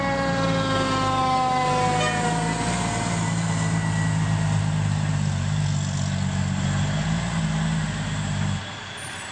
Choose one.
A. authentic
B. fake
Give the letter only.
A